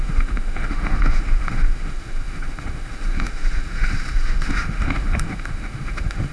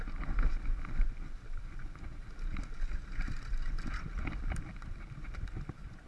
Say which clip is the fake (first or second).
first